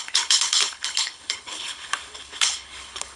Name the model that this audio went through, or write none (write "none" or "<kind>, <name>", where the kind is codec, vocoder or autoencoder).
codec, HILCodec